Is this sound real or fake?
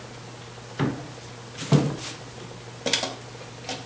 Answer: real